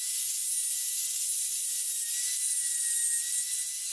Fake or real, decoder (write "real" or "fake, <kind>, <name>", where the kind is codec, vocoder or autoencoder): real